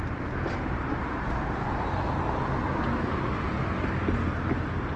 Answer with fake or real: real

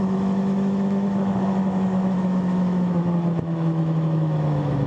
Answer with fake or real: fake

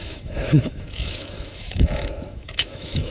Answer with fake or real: fake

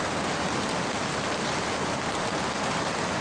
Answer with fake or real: real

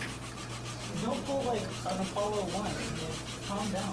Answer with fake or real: real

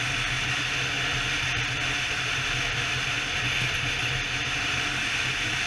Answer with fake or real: real